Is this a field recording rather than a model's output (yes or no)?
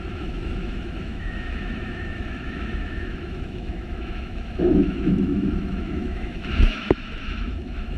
no